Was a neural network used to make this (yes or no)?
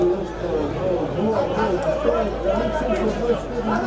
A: no